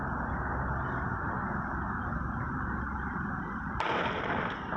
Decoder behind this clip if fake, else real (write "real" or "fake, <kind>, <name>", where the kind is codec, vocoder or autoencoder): real